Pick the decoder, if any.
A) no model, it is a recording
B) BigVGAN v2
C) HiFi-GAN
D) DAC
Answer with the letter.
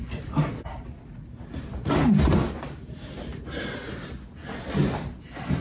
A